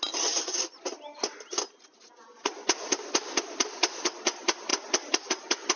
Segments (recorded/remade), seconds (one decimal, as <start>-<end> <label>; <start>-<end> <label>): 0.0-5.8 recorded